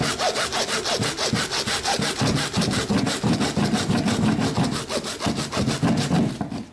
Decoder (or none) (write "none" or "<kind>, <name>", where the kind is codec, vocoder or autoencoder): none